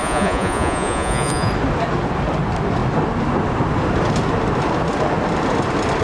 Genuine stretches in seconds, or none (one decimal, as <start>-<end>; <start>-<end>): 1.5-6.0